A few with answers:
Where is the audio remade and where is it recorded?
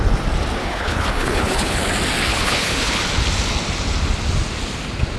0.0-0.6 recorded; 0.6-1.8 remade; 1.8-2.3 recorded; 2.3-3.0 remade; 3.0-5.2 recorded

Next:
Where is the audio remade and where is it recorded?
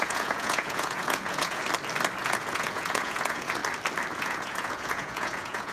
0.0-1.6 remade; 1.6-2.2 recorded; 2.2-3.6 remade; 3.6-4.1 recorded; 4.1-5.7 remade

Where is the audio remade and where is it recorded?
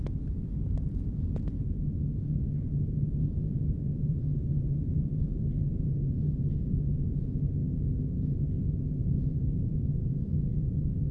0.0-7.6 remade; 7.6-8.3 recorded; 8.3-11.1 remade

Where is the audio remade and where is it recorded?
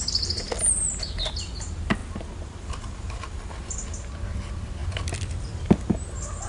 0.0-6.5 recorded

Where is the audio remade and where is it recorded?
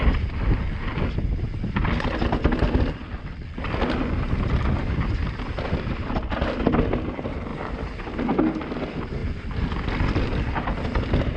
0.0-7.5 recorded; 7.5-8.2 remade; 8.2-11.4 recorded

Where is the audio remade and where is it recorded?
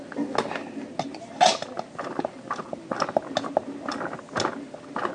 0.0-5.1 recorded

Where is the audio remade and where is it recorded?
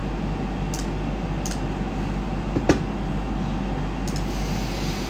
0.0-5.1 recorded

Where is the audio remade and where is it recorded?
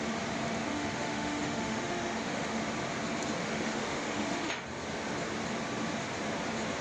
0.0-0.7 recorded; 0.7-2.6 remade; 2.6-3.4 recorded; 3.4-4.5 remade; 4.5-6.8 recorded